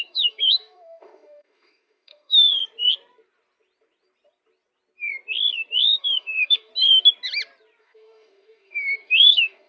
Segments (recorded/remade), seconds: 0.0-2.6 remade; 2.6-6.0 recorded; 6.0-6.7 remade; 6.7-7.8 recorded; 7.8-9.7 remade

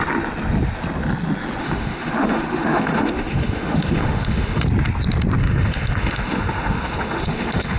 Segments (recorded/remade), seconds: 0.0-1.6 recorded; 1.6-4.6 remade; 4.6-5.4 recorded; 5.4-7.8 remade

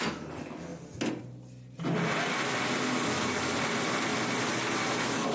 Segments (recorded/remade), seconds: 0.0-5.3 recorded